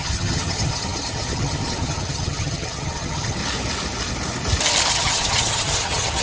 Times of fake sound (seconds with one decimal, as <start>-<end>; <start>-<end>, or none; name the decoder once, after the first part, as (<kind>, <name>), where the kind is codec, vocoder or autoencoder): 0.0-3.4 (vocoder, HiFi-GAN); 4.9-6.2